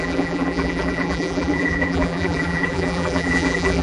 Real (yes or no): no